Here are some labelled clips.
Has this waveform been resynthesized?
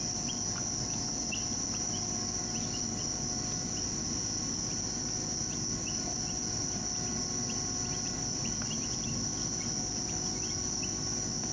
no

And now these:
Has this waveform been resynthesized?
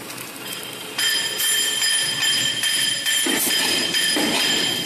no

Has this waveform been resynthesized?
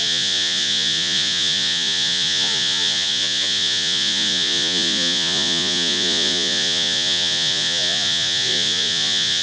yes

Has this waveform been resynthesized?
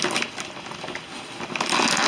no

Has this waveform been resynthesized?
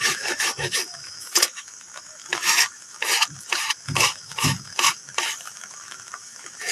yes